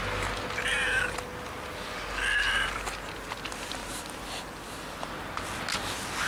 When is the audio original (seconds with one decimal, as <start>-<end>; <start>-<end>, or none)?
0.0-6.3